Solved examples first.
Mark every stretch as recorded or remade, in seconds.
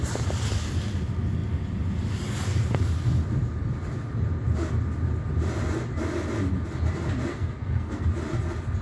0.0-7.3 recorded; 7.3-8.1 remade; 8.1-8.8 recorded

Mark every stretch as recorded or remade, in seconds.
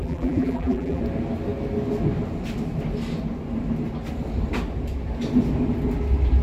0.0-1.0 remade; 1.0-6.4 recorded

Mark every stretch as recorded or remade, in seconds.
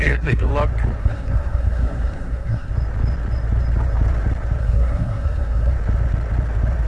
0.0-0.5 remade; 0.5-1.0 recorded; 1.0-2.7 remade; 2.7-4.6 recorded; 4.6-5.7 remade; 5.7-6.9 recorded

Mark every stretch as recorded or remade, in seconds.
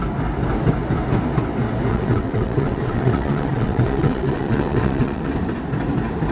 0.0-1.9 recorded; 1.9-5.3 remade; 5.3-6.3 recorded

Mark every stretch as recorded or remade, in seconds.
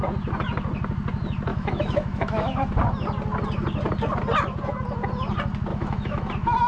0.0-1.5 recorded; 1.5-2.7 remade; 2.7-5.7 recorded; 5.7-6.3 remade; 6.3-6.7 recorded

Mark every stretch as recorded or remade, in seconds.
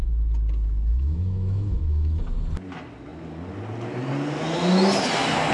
0.0-0.9 recorded; 0.9-2.2 remade; 2.2-5.5 recorded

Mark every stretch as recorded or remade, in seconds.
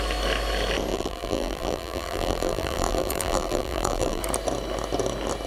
0.0-0.9 recorded; 0.9-4.2 remade; 4.2-5.5 recorded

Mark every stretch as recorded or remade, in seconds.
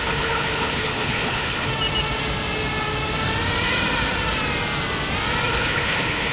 0.0-1.7 remade; 1.7-5.5 recorded; 5.5-6.3 remade